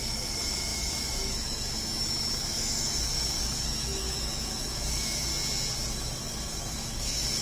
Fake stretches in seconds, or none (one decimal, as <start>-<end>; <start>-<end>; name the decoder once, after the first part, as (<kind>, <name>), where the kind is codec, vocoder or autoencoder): 0.0-5.3 (autoencoder, DAC-VAE); 5.9-7.4

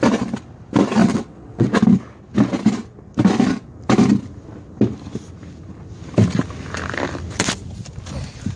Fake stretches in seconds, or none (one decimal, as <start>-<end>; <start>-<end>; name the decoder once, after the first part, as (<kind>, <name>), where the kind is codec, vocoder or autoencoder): 1.0-1.7 (vocoder, WaveNeXt)